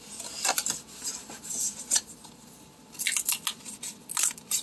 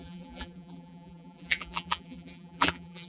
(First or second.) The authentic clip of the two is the first